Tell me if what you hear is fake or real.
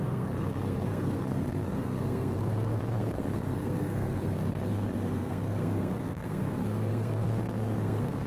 fake